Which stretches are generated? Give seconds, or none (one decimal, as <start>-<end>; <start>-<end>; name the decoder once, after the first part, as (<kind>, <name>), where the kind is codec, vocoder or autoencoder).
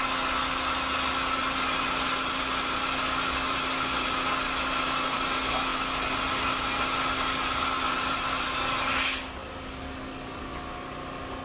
none